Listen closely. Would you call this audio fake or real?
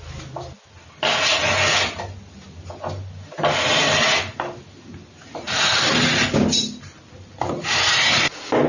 real